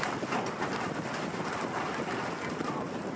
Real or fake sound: real